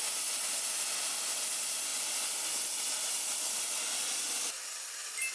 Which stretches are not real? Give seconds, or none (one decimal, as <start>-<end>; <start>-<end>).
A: none